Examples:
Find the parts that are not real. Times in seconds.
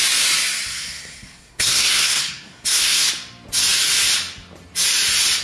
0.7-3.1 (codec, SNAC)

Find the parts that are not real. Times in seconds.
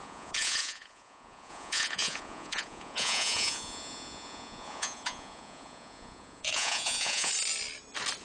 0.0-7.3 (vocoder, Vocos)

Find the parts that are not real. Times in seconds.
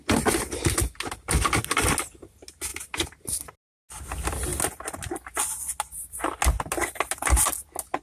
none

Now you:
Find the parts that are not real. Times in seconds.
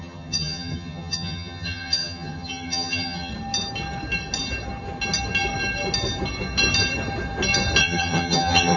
0.0-3.3 (vocoder, HiFi-GAN); 7.8-8.8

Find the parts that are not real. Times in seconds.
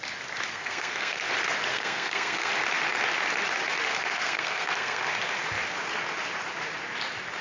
0.5-1.2 (codec, SNAC); 1.7-2.5; 3.9-5.1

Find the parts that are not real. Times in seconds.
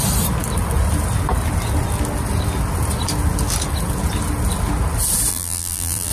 5.3-6.1 (vocoder, BigVGAN v2)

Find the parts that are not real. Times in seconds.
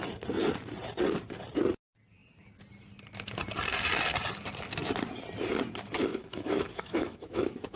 6.1-7.8 (autoencoder, DAC-VAE)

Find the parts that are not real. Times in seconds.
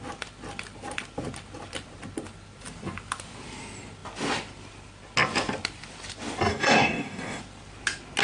6.5-7.4 (codec, DAC)